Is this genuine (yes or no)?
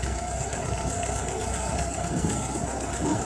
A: no